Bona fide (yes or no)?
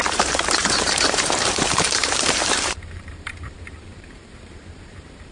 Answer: no